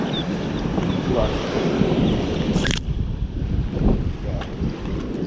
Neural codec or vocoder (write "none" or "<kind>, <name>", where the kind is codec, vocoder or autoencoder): vocoder, BigVGAN v2